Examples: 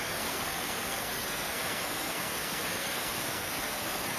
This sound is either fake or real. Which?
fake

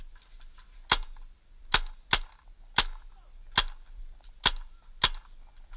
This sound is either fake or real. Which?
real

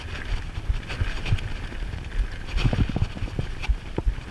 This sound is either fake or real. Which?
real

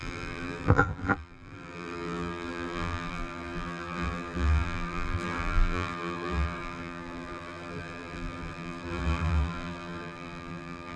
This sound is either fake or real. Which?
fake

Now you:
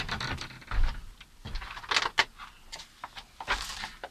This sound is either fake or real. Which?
real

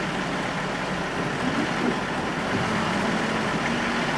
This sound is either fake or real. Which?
real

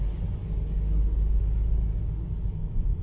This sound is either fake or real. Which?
real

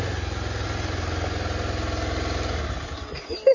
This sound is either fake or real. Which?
real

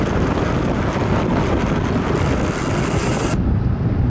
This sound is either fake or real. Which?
real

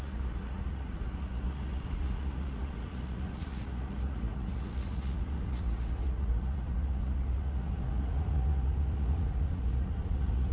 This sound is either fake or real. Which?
fake